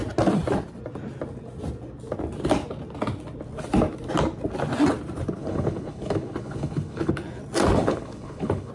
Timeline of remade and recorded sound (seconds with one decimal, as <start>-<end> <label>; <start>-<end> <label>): 0.0-5.4 recorded; 5.4-7.1 remade; 7.1-7.8 recorded; 7.8-8.7 remade

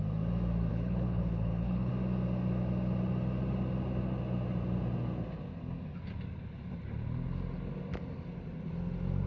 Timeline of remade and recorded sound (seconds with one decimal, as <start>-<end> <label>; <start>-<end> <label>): 0.0-0.7 recorded; 0.7-1.9 remade; 1.9-9.3 recorded

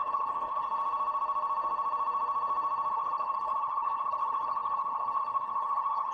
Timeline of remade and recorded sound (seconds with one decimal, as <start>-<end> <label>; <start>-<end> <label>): 0.0-0.7 remade; 0.7-2.9 recorded; 2.9-6.1 remade

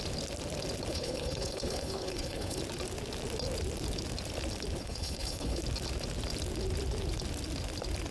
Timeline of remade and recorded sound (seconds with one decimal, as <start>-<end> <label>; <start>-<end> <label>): 0.0-0.9 recorded; 0.9-2.6 remade; 2.6-4.8 recorded; 4.8-5.6 remade; 5.6-8.1 recorded